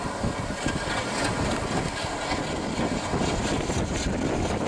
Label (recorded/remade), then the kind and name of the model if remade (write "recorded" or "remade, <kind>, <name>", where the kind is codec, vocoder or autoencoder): recorded